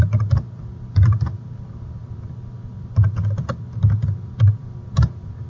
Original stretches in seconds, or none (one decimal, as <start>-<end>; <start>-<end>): 0.0-5.5